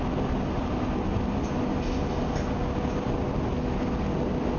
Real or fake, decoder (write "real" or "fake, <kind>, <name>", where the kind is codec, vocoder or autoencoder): real